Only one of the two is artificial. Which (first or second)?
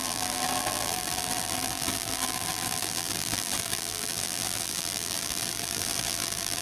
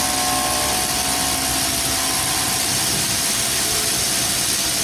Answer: first